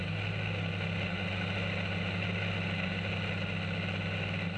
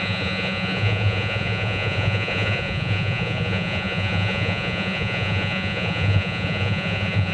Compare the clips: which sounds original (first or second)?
first